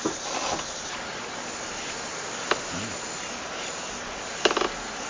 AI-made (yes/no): no